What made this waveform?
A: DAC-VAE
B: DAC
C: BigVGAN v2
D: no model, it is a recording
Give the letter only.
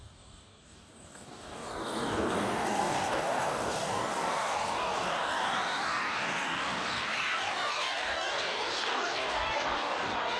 B